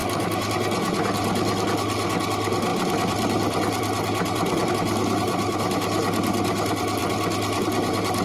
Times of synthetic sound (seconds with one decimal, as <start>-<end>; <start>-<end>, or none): 0.0-0.5; 2.7-4.7

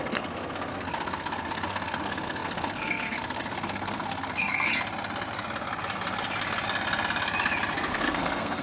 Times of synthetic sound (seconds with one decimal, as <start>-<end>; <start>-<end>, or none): 0.0-4.7; 7.9-8.6

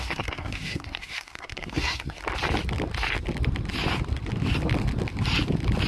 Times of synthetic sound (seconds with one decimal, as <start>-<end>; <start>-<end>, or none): 0.0-2.2

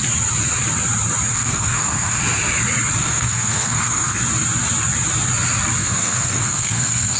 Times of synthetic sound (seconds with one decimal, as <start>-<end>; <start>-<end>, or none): 1.3-2.2; 3.0-4.2; 5.8-7.2

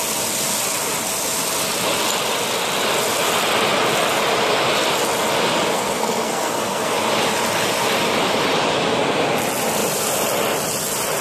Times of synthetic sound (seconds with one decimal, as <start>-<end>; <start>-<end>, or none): 5.7-6.9